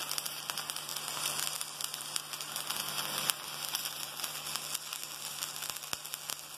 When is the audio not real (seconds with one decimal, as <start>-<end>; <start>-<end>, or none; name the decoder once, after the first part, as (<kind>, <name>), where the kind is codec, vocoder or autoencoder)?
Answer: none